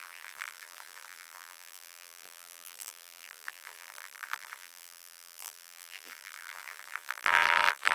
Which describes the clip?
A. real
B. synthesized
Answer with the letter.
B